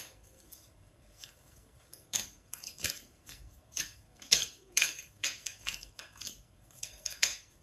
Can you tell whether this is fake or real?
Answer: fake